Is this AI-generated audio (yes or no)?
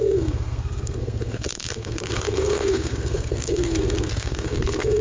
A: yes